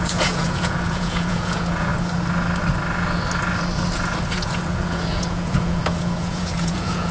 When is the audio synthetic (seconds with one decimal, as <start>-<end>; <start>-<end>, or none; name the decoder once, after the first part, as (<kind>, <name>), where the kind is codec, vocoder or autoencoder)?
0.0-1.9 (vocoder, Vocos); 4.3-7.1

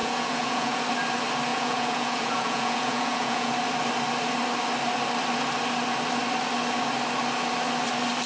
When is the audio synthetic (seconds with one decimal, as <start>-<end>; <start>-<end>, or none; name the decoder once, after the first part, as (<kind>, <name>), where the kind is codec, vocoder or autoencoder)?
0.0-0.8 (vocoder, Vocos); 1.5-3.5

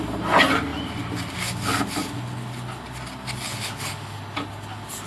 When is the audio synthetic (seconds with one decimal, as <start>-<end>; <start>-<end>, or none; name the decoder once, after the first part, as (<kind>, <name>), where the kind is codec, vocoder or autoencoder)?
none

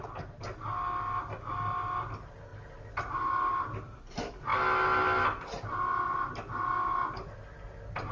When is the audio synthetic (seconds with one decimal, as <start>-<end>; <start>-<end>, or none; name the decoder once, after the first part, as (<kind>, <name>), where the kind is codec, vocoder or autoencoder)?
none

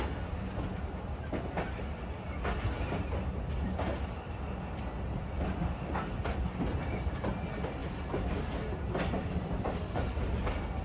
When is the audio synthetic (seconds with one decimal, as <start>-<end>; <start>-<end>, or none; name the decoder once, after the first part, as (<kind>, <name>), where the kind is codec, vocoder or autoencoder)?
7.8-8.4 (vocoder, BigVGAN v2); 9.2-10.4